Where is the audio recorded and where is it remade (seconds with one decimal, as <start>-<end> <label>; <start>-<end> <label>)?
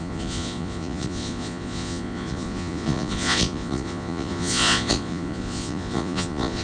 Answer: 0.0-6.6 remade